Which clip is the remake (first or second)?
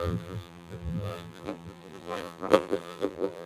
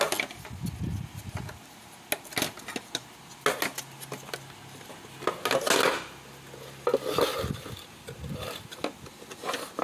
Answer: first